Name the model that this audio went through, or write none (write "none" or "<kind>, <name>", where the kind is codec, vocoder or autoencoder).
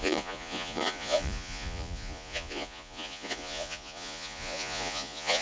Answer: vocoder, Vocos